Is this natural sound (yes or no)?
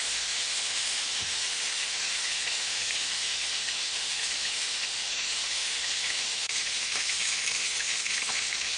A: no